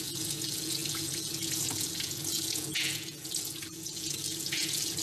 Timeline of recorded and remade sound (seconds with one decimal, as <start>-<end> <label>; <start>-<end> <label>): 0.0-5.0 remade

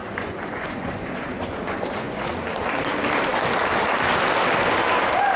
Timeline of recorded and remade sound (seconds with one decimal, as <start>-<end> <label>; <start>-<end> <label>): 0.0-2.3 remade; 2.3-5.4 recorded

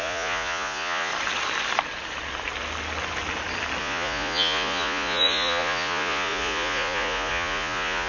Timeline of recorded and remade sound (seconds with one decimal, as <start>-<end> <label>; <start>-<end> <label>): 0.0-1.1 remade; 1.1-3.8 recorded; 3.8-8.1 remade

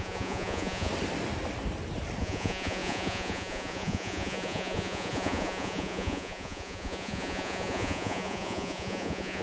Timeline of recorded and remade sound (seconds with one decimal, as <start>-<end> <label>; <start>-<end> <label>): 0.0-0.9 remade; 0.9-2.2 recorded; 2.2-9.4 remade